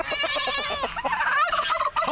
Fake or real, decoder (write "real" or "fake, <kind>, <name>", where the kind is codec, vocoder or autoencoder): fake, vocoder, BigVGAN v2